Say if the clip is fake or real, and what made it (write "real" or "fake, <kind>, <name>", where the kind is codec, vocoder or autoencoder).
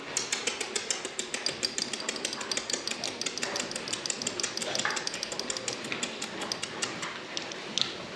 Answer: real